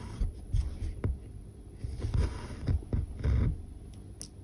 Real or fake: real